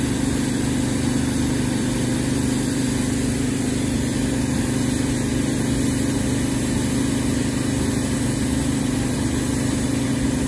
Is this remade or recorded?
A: recorded